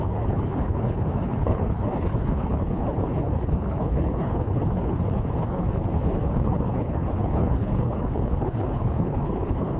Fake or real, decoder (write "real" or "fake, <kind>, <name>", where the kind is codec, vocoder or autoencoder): fake, codec, HILCodec